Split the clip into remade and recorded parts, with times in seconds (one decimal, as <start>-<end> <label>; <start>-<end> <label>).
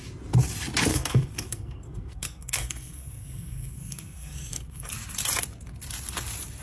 0.0-0.9 recorded; 0.9-4.9 remade; 4.9-6.6 recorded